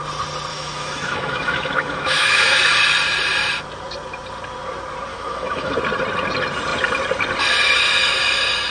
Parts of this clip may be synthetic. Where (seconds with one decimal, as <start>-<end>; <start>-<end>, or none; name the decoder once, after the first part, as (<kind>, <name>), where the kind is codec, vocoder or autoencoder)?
0.5-2.6 (autoencoder, DAC-VAE); 5.1-5.7